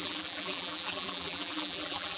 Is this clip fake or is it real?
fake